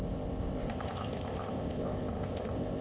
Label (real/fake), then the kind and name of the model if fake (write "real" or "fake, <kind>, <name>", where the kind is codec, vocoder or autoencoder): fake, codec, ZipCodec